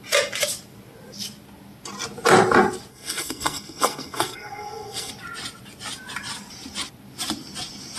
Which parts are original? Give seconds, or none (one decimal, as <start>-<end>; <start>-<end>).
0.0-2.9; 5.1-8.0